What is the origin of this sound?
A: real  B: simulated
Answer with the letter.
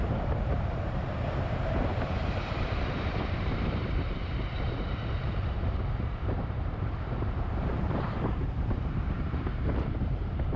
B